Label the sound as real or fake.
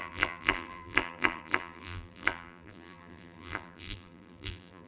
fake